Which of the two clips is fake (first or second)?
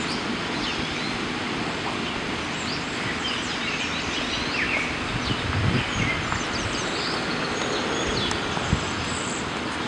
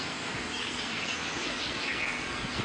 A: second